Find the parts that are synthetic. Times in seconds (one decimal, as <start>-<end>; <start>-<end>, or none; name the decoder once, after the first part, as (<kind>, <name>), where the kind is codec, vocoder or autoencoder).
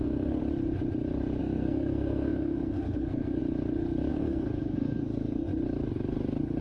0.0-0.4 (codec, SNAC); 1.4-3.4; 4.1-5.5